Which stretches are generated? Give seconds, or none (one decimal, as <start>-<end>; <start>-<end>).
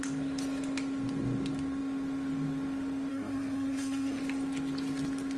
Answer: 3.1-4.2